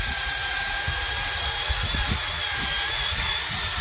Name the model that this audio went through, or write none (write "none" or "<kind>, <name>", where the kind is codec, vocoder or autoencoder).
vocoder, Vocos